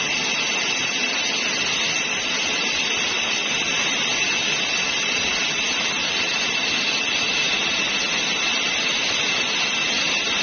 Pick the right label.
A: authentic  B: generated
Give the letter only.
A